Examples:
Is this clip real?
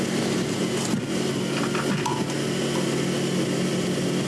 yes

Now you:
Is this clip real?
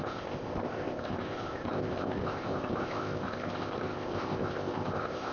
no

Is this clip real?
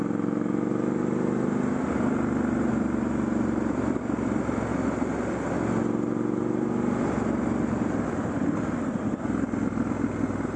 yes